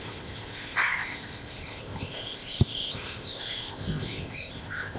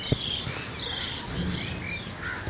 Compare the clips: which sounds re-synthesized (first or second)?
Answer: first